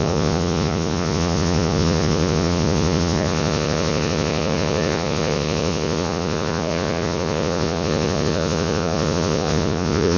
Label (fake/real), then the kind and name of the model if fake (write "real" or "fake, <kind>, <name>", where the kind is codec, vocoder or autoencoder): fake, vocoder, Vocos